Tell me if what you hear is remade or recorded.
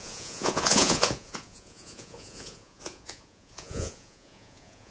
remade